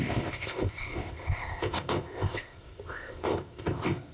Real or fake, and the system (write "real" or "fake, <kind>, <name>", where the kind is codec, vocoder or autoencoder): fake, codec, ZipCodec